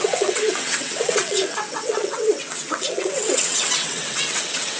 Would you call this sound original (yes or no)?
no